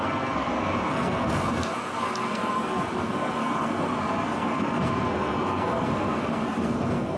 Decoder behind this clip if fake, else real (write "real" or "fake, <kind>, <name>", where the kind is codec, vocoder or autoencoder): fake, codec, SNAC